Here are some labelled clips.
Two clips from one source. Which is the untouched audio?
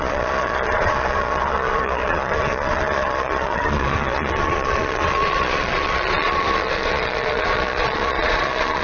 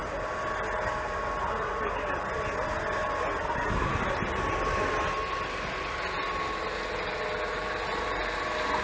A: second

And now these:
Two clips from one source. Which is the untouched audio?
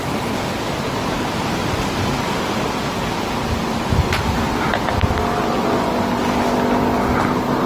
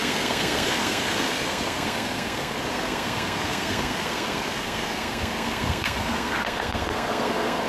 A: first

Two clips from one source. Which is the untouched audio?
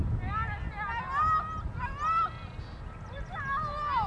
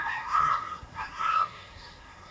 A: first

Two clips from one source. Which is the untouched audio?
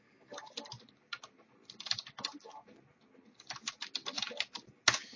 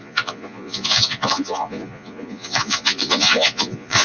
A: first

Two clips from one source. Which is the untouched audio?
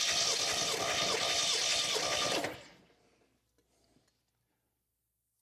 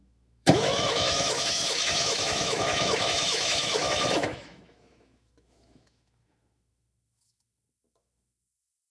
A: first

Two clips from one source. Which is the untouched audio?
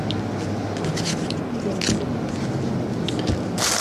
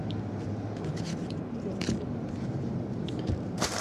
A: first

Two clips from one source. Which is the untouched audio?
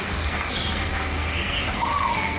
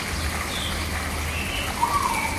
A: second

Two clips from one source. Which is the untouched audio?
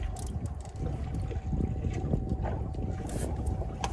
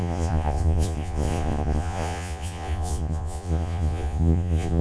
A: first